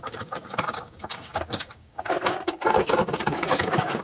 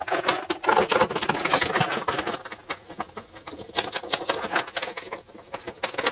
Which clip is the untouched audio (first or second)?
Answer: second